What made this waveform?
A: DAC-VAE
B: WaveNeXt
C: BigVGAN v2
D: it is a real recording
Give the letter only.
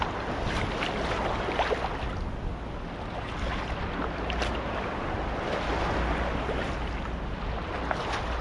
D